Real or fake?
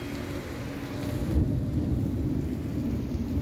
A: real